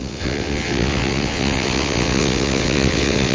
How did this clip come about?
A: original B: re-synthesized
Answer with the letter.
B